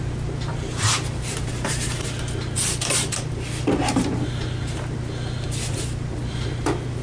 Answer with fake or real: real